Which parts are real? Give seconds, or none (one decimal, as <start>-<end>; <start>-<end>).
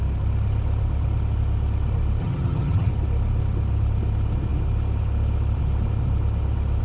0.0-2.2; 2.9-6.8